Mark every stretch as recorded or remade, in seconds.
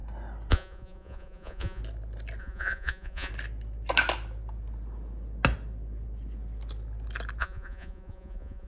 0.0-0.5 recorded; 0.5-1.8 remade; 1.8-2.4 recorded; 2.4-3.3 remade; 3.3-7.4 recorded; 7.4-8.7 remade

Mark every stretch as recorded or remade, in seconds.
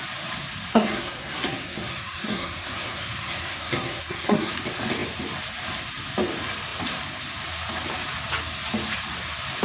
0.0-0.7 recorded; 0.7-4.5 remade; 4.5-9.6 recorded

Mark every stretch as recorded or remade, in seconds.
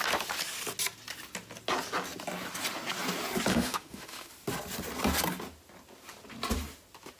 0.0-3.5 recorded; 3.5-4.3 remade; 4.3-7.2 recorded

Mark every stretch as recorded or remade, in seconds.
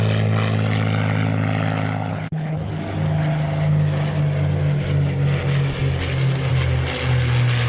0.0-2.1 recorded; 2.1-2.7 remade; 2.7-7.7 recorded